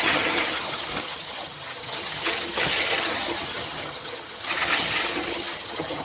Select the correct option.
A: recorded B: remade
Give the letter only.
B